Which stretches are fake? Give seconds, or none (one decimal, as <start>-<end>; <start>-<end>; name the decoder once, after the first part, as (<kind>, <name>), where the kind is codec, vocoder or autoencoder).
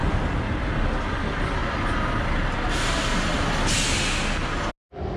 none